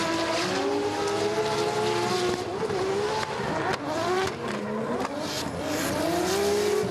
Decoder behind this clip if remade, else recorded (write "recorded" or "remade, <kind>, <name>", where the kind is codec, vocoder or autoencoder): recorded